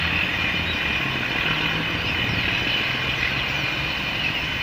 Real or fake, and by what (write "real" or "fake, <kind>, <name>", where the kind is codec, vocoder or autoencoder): real